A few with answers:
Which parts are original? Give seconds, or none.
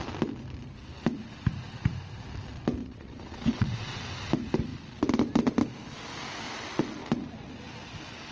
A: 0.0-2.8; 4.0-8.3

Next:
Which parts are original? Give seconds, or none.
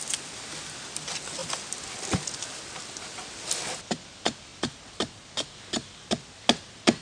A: 0.0-7.0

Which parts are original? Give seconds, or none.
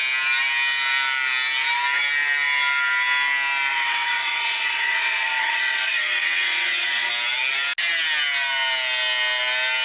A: 0.0-3.7; 7.1-9.8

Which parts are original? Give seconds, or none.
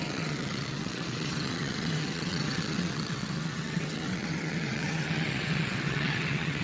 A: none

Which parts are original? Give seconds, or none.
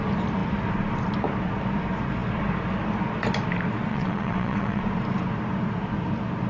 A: 0.0-3.9; 4.8-6.5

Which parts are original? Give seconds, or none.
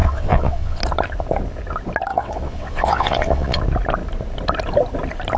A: 0.8-2.1; 3.6-5.4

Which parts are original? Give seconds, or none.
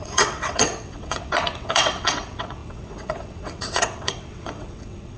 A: none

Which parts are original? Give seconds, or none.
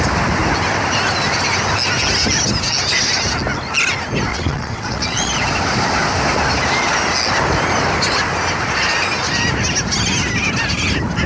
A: 0.0-4.3; 5.3-11.3